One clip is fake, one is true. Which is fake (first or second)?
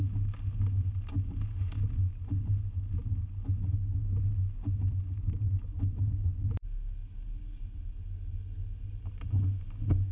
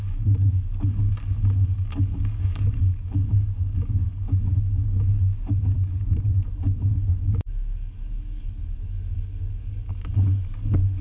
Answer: second